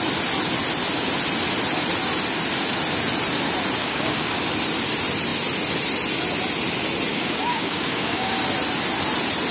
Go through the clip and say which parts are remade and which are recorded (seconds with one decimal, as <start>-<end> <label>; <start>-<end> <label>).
0.0-3.8 recorded; 3.8-4.4 remade; 4.4-7.1 recorded; 7.1-8.3 remade; 8.3-9.5 recorded